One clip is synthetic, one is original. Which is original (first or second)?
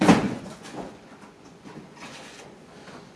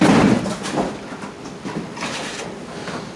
second